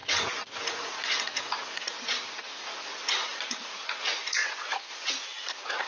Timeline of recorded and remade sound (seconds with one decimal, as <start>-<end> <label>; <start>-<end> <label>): 0.0-5.9 remade